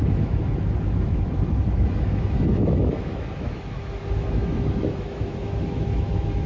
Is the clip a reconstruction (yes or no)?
yes